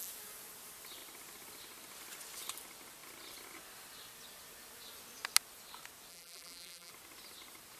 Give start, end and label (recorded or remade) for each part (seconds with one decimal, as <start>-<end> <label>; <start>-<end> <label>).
0.0-6.1 recorded; 6.1-6.9 remade; 6.9-7.8 recorded